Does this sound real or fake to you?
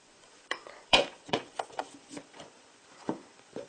fake